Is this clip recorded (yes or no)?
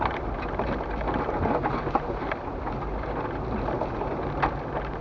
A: yes